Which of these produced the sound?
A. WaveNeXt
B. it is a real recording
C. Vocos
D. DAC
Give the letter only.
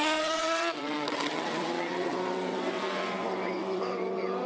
A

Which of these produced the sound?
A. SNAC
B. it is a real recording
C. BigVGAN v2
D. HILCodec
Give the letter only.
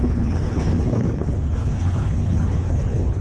D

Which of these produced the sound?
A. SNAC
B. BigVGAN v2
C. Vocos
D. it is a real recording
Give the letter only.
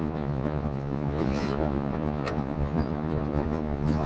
C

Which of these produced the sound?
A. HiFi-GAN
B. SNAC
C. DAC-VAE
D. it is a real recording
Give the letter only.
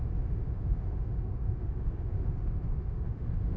C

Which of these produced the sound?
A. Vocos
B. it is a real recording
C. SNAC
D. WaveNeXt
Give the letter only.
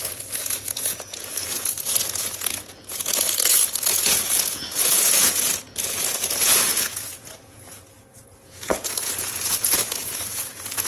A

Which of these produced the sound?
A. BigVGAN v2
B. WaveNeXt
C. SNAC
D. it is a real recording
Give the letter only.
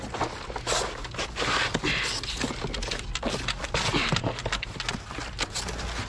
D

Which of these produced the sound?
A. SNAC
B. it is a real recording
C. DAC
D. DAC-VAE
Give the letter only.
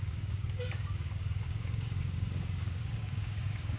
C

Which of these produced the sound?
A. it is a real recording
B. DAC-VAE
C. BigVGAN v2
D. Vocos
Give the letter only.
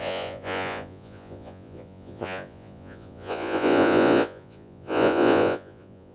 D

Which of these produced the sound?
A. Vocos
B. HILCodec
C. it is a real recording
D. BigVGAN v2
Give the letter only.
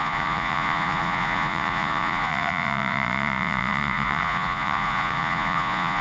A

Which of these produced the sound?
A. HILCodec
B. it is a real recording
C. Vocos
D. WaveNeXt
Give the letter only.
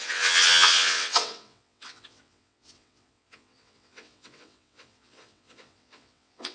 D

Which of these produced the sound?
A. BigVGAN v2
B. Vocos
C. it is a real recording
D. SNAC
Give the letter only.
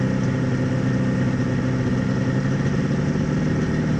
C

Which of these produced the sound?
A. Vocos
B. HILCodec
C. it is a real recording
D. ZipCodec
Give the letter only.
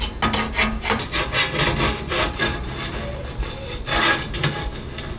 C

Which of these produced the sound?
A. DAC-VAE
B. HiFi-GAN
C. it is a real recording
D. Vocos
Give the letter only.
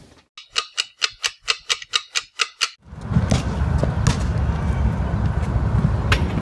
C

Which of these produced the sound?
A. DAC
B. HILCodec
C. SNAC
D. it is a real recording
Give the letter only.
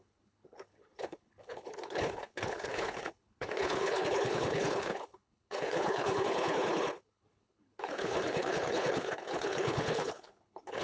B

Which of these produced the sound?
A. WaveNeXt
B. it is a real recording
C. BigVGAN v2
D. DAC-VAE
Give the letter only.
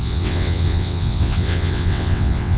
A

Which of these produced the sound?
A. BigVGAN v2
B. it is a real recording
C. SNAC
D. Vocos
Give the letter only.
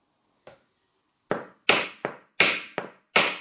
B